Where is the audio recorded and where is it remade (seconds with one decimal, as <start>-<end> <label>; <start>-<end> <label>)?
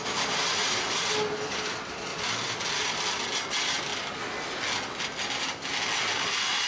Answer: 0.0-2.1 recorded; 2.1-2.6 remade; 2.6-6.7 recorded